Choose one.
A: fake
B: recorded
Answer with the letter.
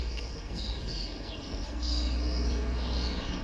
A